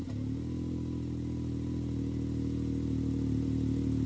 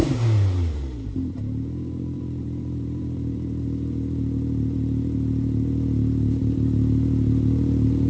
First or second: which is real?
first